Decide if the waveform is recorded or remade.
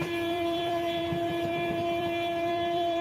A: remade